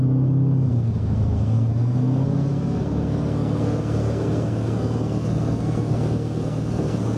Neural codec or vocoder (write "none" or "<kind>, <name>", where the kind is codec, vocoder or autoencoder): codec, SNAC